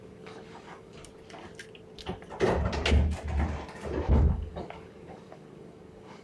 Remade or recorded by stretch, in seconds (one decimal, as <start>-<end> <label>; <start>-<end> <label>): 0.0-1.0 remade; 1.0-4.0 recorded; 4.0-6.2 remade